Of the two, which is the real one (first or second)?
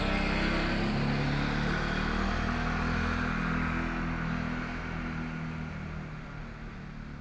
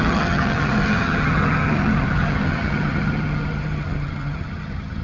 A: first